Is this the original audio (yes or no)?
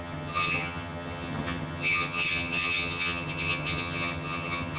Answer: no